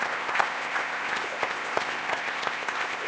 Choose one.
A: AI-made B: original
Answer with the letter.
A